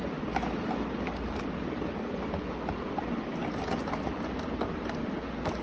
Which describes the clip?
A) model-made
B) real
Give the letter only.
B